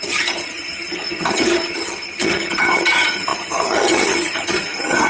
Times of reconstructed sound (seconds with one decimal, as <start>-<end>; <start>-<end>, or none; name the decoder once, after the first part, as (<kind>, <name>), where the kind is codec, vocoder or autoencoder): 0.0-5.1 (vocoder, HiFi-GAN)